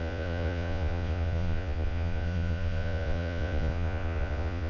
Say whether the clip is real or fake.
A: fake